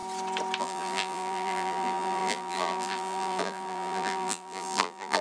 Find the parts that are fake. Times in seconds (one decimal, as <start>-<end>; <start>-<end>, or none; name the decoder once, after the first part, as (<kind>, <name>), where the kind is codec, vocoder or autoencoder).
0.6-5.2 (vocoder, BigVGAN v2)